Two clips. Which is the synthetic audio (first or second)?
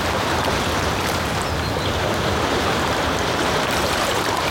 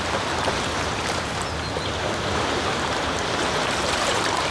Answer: first